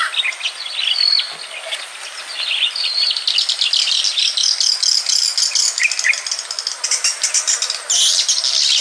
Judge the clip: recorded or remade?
recorded